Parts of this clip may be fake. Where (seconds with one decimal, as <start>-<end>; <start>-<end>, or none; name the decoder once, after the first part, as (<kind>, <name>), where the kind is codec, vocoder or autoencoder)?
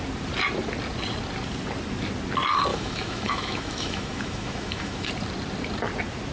2.7-5.1 (autoencoder, DAC-VAE)